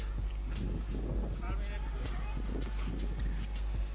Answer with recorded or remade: recorded